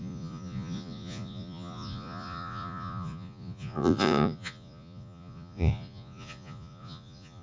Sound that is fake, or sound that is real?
fake